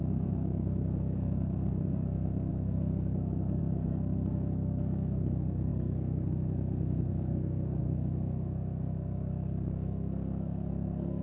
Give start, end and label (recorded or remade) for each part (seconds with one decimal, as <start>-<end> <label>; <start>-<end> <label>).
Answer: 0.0-11.2 remade